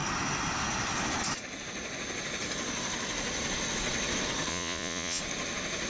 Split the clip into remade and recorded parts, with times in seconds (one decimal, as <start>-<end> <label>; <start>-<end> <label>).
0.0-4.5 recorded; 4.5-5.2 remade; 5.2-5.9 recorded